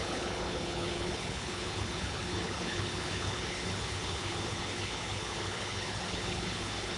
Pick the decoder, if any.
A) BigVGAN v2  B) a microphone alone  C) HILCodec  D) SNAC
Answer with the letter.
C